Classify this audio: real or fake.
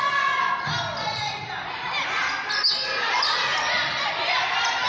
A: real